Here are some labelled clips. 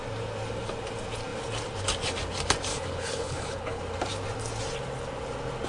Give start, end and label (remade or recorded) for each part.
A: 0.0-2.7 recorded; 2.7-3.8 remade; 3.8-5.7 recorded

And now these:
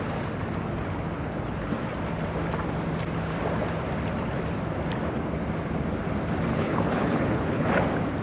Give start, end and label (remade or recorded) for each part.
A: 0.0-6.5 recorded; 6.5-7.7 remade; 7.7-8.2 recorded

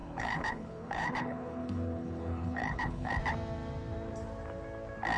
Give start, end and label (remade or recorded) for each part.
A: 0.0-3.1 remade; 3.1-5.2 recorded

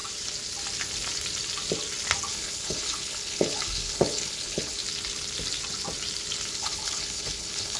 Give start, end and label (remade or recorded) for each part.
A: 0.0-2.3 recorded; 2.3-4.8 remade; 4.8-6.5 recorded; 6.5-7.8 remade

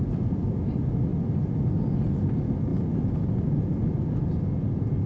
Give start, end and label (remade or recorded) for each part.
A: 0.0-5.1 recorded

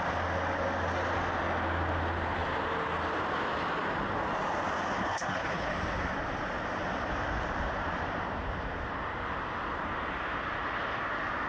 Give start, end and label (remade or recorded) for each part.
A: 0.0-5.0 recorded; 5.0-5.7 remade; 5.7-11.5 recorded

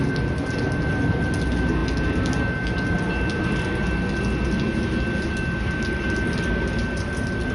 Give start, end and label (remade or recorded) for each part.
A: 0.0-7.5 recorded